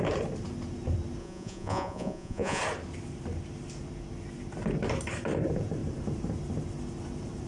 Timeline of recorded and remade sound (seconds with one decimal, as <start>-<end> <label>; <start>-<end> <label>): 0.0-1.2 recorded; 1.2-2.6 remade; 2.6-7.5 recorded